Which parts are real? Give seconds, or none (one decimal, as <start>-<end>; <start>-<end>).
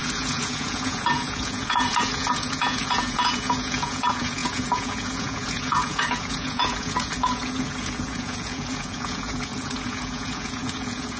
none